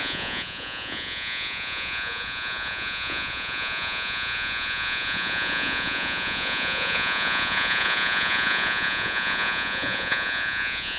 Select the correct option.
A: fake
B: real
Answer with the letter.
A